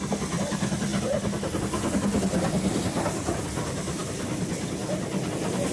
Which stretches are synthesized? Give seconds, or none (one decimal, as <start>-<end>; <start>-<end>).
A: none